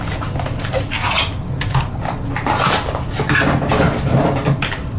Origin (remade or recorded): recorded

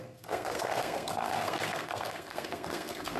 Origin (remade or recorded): remade